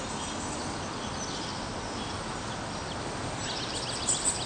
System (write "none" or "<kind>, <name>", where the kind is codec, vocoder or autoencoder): none